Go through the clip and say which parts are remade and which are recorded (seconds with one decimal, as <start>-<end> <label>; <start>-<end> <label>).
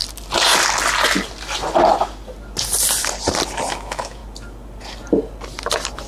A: 0.0-3.7 recorded; 3.7-4.2 remade; 4.2-6.1 recorded